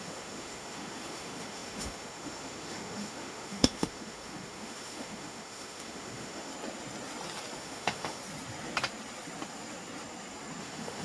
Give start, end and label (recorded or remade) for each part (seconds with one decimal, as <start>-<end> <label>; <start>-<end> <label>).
0.0-6.5 remade; 6.5-7.6 recorded; 7.6-8.2 remade; 8.2-10.6 recorded; 10.6-11.0 remade